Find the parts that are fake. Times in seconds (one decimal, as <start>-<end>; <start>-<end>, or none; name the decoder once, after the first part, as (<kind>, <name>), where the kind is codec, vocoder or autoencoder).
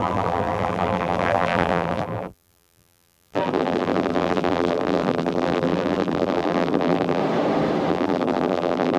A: 0.0-7.2 (vocoder, BigVGAN v2); 7.9-9.0